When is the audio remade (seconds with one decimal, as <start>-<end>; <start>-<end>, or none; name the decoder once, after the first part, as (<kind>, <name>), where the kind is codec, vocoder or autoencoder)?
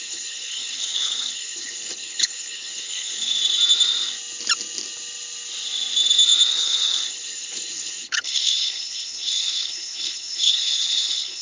0.0-3.4 (codec, HILCodec); 6.5-11.4